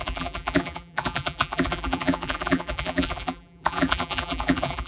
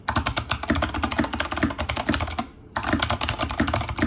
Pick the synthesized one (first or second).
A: first